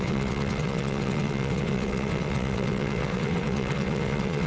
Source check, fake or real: fake